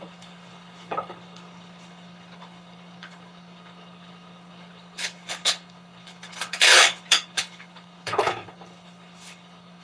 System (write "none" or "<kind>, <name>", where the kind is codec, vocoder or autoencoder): codec, HILCodec